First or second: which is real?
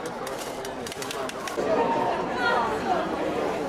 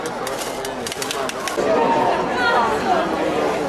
second